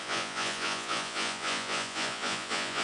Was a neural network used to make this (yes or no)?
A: yes